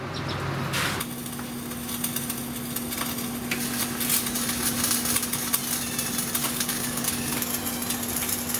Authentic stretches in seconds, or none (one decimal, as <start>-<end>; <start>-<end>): 0.0-6.4; 7.5-8.6